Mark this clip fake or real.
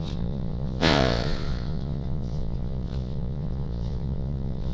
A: fake